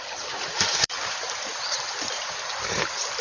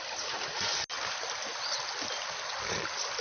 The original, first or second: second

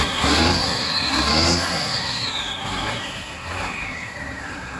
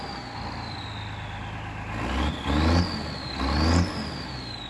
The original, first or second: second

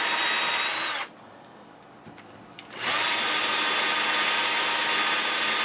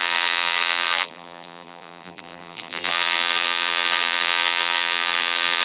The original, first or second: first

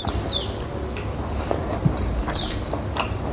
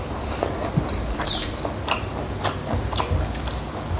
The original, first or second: second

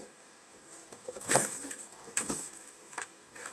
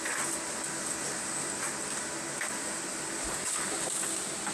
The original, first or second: second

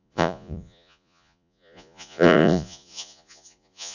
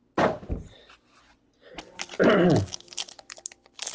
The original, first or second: second